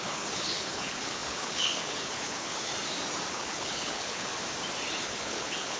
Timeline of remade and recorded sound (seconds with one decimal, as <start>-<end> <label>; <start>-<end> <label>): 0.0-2.7 remade; 2.7-3.3 recorded; 3.3-4.3 remade; 4.3-5.0 recorded; 5.0-5.8 remade